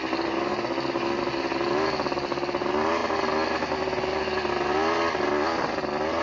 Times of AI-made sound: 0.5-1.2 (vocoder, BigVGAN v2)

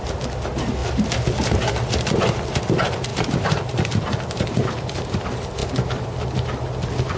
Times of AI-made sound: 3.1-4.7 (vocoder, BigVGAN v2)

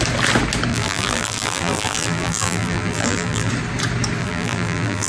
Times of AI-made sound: 0.7-3.5 (vocoder, BigVGAN v2); 4.2-5.1

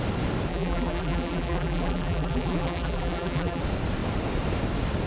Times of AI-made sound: 0.5-3.6 (vocoder, BigVGAN v2)

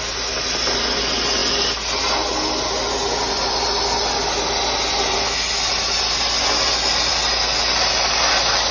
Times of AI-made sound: none

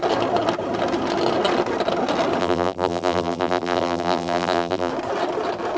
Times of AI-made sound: 2.4-4.9 (vocoder, BigVGAN v2)

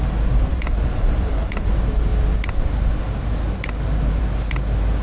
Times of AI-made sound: 0.5-1.7 (vocoder, BigVGAN v2)